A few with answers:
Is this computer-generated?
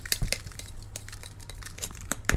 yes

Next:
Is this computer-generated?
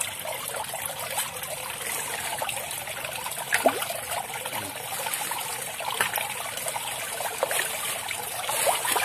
no